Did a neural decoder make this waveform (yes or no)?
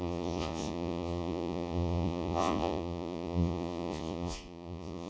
yes